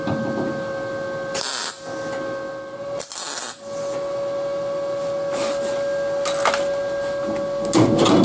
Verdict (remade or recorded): recorded